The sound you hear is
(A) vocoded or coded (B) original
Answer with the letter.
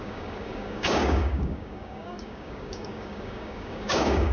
A